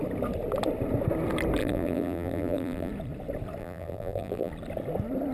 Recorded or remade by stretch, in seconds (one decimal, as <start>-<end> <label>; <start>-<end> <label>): 0.0-1.6 recorded; 1.6-2.9 remade; 2.9-3.6 recorded; 3.6-4.5 remade; 4.5-5.3 recorded

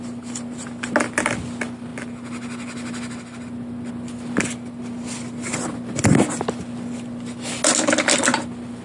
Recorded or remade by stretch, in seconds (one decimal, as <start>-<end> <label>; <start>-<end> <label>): 0.0-8.8 recorded

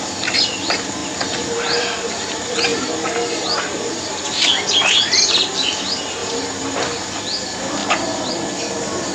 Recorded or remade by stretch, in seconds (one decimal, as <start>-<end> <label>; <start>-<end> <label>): 0.0-2.7 recorded; 2.7-4.2 remade; 4.2-6.2 recorded; 6.2-6.8 remade; 6.8-7.8 recorded; 7.8-8.3 remade; 8.3-9.1 recorded